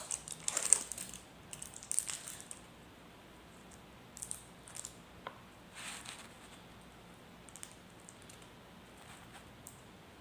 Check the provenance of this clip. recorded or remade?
recorded